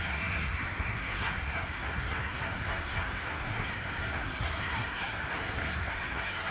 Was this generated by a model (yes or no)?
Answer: yes